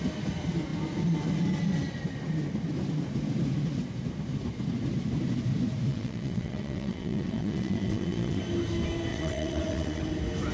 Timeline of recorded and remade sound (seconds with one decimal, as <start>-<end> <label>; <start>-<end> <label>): 0.0-5.9 recorded; 5.9-8.4 remade; 8.4-9.1 recorded; 9.1-10.0 remade; 10.0-10.5 recorded